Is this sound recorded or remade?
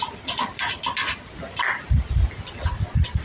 recorded